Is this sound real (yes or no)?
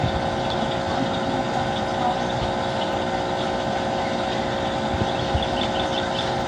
yes